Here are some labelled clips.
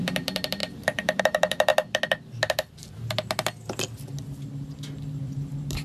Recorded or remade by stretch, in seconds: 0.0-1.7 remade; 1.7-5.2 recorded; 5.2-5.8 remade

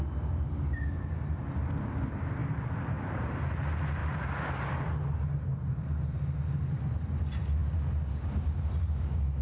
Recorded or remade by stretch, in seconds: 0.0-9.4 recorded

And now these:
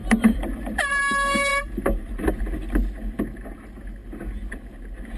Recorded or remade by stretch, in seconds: 0.0-1.0 remade; 1.0-1.5 recorded; 1.5-2.3 remade; 2.3-5.2 recorded

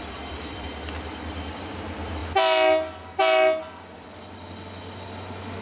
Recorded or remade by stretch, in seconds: 0.0-2.2 remade; 2.2-5.6 recorded